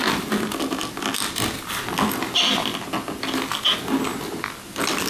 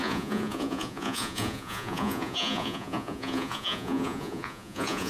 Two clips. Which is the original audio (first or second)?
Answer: first